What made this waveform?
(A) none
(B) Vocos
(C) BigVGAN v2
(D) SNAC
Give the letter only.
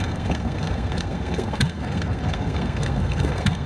D